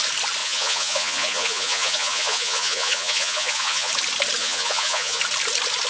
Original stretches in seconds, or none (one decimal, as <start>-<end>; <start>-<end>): 0.0-0.4; 3.9-4.4; 5.2-5.9